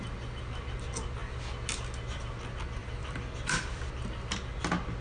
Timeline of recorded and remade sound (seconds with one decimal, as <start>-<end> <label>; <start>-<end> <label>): 0.0-2.8 recorded; 2.8-3.9 remade; 3.9-5.0 recorded